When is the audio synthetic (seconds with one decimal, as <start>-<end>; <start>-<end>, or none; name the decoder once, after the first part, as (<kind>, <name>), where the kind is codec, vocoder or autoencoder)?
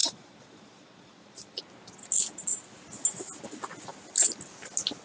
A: 0.0-1.6 (vocoder, Vocos)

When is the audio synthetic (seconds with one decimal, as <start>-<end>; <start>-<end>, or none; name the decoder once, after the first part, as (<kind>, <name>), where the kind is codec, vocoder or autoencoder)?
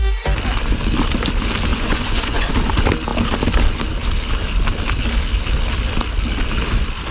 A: 1.7-2.5 (vocoder, Vocos)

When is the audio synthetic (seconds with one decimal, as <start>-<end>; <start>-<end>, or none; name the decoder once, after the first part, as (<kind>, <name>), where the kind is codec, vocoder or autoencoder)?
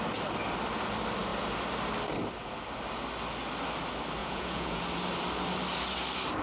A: 4.2-4.8 (vocoder, Vocos)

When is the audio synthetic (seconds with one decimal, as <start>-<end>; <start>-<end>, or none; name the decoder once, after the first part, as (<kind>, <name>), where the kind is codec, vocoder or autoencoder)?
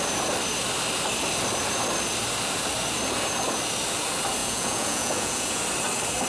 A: 4.4-5.6 (vocoder, Vocos)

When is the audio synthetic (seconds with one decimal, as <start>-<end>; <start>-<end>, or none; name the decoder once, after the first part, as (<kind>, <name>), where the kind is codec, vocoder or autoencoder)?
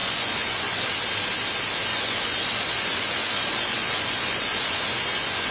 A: 0.0-0.9 (vocoder, Vocos); 1.9-5.5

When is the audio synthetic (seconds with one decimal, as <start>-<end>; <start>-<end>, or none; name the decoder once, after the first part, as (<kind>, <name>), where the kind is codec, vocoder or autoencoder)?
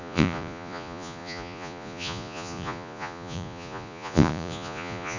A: 0.0-5.2 (vocoder, Vocos)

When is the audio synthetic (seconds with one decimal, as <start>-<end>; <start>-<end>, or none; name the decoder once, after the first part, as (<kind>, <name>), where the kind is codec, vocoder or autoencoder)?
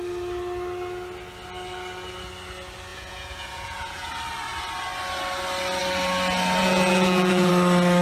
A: 2.9-4.1 (vocoder, Vocos); 6.6-7.5